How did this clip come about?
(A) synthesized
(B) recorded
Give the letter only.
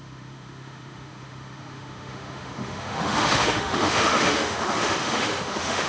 A